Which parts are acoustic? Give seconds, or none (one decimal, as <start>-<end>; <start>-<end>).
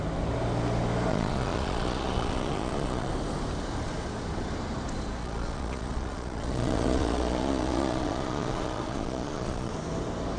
0.0-1.1; 3.1-5.2; 9.7-10.4